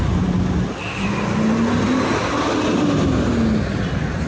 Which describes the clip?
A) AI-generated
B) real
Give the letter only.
B